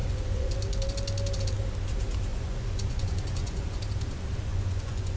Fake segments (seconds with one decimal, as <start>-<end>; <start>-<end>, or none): 0.0-0.5; 2.3-3.8; 4.5-5.2